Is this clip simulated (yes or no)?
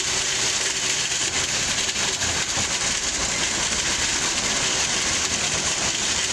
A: yes